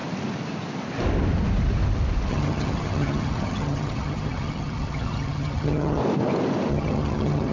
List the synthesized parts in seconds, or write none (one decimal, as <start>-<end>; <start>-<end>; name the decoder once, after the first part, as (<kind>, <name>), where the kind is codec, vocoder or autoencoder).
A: 2.3-6.0 (vocoder, HiFi-GAN); 6.7-7.5